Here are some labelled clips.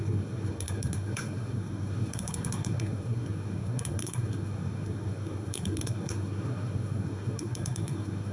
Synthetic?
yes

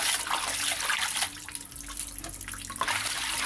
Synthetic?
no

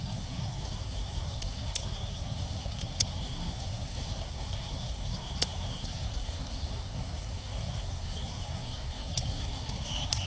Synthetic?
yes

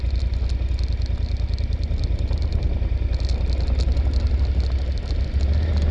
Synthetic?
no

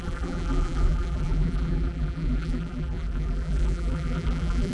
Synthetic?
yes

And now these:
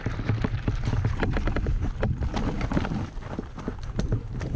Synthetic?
no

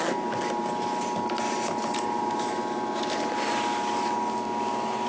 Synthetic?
no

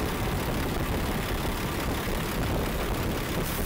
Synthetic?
no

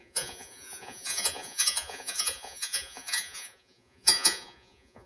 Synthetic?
yes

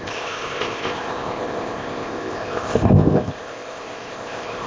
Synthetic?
yes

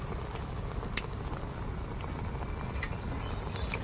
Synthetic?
no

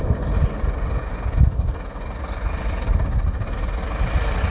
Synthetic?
no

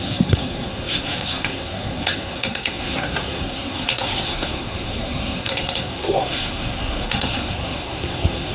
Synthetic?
yes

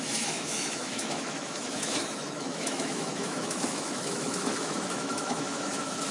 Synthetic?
yes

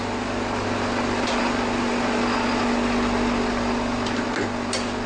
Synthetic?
no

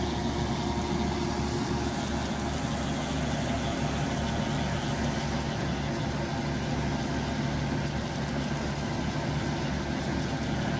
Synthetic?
no